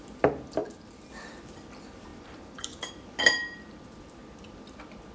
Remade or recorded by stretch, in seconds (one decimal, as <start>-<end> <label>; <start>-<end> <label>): 0.0-2.1 recorded; 2.1-2.9 remade; 2.9-5.1 recorded